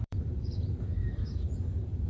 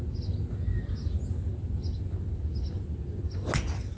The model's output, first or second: first